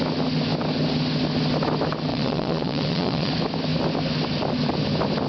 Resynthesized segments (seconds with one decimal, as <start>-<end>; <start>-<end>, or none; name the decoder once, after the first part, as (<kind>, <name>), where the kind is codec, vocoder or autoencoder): 2.1-3.3 (vocoder, Vocos)